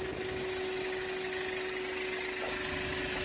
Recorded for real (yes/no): yes